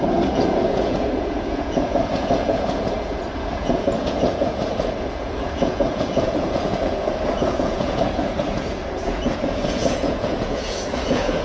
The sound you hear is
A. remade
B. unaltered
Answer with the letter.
A